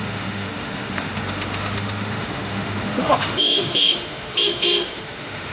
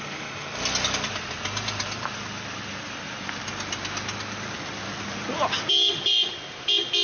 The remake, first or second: first